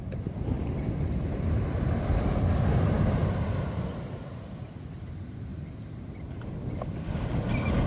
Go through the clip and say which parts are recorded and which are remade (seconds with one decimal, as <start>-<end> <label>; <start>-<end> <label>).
0.0-7.9 recorded